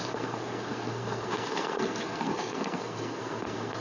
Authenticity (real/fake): fake